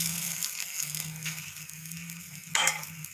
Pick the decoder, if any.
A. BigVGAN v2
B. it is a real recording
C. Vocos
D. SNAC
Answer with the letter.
D